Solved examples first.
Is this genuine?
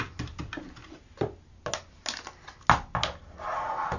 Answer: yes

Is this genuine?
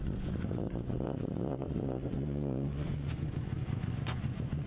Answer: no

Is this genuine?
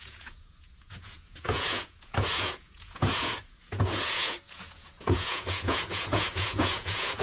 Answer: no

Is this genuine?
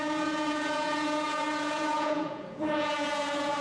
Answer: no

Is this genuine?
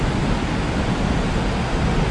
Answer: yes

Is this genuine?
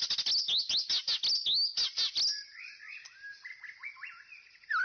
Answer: yes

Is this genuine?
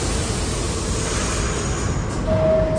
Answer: yes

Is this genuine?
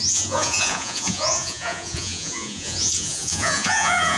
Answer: no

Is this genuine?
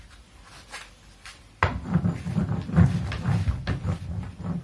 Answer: yes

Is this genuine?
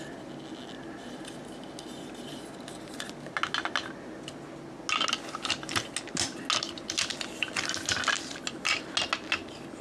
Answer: yes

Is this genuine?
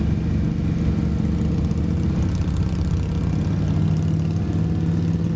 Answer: yes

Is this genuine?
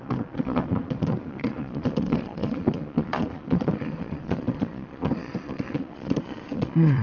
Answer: no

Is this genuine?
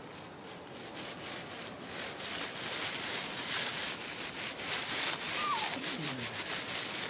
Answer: yes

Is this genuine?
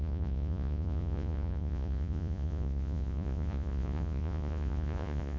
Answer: no